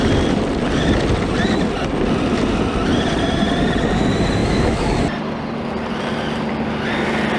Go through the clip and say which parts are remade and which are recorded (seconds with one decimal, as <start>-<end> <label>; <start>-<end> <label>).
0.0-4.4 recorded; 4.4-5.0 remade; 5.0-7.4 recorded